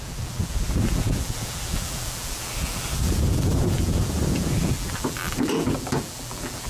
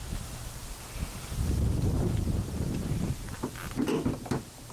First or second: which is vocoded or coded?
first